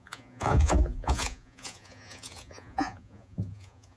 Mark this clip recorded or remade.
remade